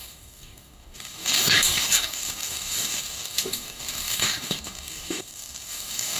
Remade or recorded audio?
remade